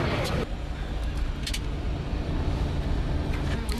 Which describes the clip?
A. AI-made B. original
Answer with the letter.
B